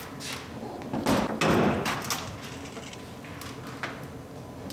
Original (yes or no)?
yes